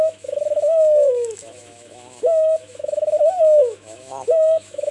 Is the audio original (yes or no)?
no